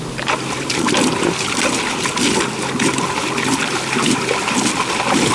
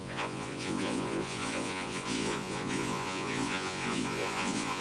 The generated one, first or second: second